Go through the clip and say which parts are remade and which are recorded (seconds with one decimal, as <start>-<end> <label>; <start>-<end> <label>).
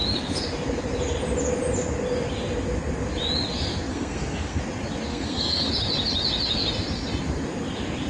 0.0-3.9 recorded; 3.9-4.6 remade; 4.6-5.1 recorded; 5.1-5.7 remade; 5.7-8.1 recorded